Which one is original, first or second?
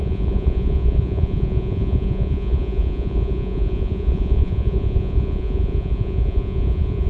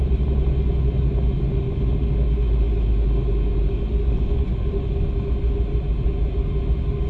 second